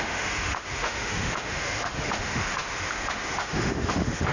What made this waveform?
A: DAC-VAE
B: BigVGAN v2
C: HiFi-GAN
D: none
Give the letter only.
A